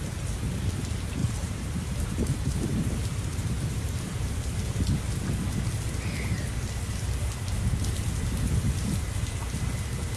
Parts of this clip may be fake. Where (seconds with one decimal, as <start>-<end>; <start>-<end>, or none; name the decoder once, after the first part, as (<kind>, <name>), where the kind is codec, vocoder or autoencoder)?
1.2-4.3 (vocoder, BigVGAN v2)